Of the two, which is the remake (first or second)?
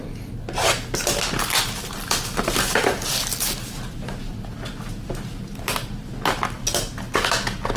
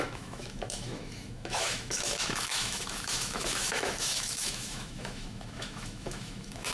second